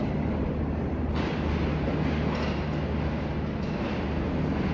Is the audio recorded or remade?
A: recorded